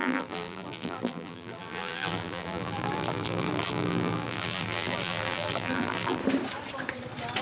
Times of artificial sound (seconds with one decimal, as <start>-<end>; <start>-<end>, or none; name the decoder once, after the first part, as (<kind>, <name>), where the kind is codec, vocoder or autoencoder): 0.0-6.2 (vocoder, BigVGAN v2)